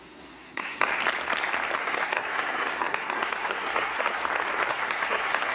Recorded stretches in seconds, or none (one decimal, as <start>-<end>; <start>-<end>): 0.9-1.8; 4.2-4.7